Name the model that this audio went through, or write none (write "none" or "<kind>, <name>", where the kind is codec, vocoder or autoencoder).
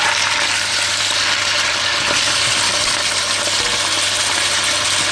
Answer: none